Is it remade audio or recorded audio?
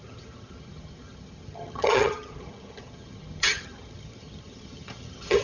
remade